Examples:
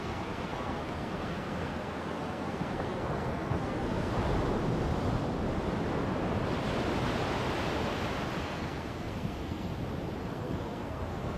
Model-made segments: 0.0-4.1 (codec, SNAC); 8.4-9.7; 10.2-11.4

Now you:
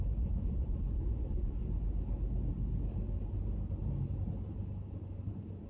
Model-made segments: 0.0-1.6 (vocoder, Vocos); 5.0-5.7

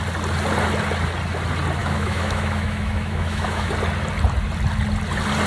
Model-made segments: 1.8-3.7 (autoencoder, DAC-VAE)

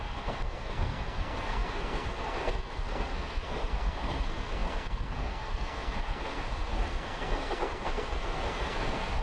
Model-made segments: 0.0-9.2 (codec, SNAC)

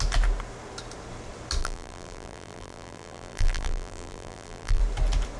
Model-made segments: 1.6-4.8 (vocoder, BigVGAN v2)

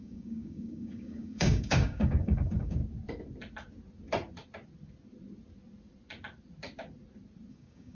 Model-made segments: 0.0-2.8 (codec, DAC); 7.5-7.9

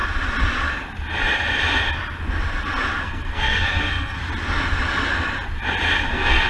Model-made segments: 3.0-4.2 (codec, SNAC); 6.1-6.5

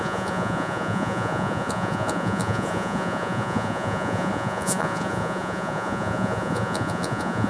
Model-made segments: 0.0-7.5 (vocoder, Vocos)